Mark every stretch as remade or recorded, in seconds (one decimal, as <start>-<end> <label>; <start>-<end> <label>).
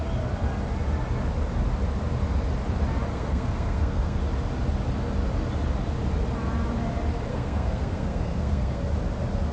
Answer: 0.0-3.1 recorded; 3.1-4.2 remade; 4.2-7.3 recorded; 7.3-8.8 remade; 8.8-9.5 recorded